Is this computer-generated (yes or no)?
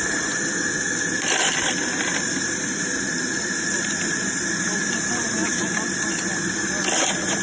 yes